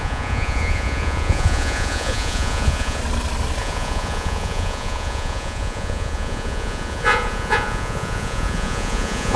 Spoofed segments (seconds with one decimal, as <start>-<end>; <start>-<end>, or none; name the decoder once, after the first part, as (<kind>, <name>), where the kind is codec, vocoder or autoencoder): 0.0-3.0 (vocoder, Vocos); 3.6-9.4